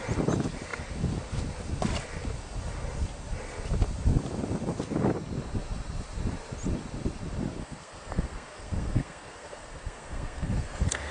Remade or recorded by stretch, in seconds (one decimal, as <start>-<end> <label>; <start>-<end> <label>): 0.0-7.6 recorded; 7.6-11.1 remade